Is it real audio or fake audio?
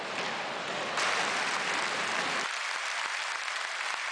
real